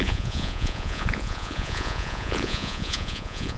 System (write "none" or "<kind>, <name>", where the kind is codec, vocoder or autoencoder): vocoder, Vocos